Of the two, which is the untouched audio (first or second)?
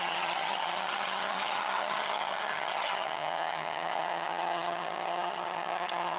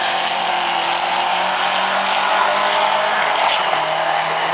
second